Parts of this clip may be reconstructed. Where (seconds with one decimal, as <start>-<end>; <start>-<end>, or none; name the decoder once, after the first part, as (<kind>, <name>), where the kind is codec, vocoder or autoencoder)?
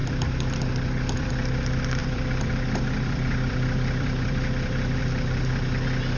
0.0-1.3 (vocoder, BigVGAN v2); 2.0-5.0